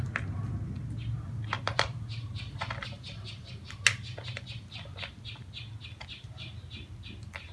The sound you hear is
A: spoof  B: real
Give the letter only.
B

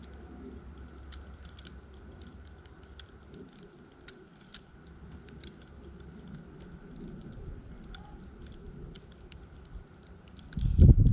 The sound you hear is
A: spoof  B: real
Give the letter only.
B